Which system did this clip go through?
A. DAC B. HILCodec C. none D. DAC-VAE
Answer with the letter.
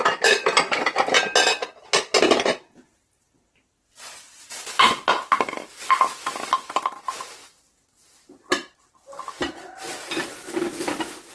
C